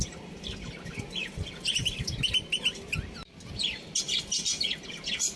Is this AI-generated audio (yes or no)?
no